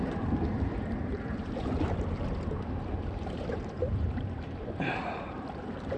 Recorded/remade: remade